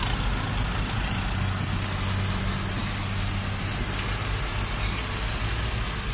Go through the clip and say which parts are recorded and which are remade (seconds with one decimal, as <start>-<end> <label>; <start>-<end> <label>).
0.0-6.1 recorded